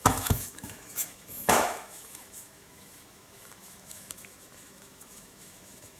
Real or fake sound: fake